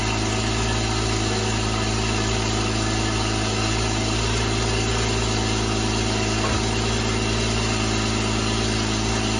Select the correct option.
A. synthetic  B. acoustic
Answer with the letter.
B